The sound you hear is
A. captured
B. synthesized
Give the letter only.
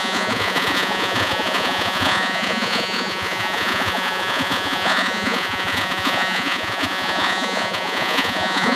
B